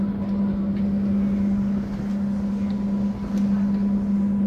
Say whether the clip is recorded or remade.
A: recorded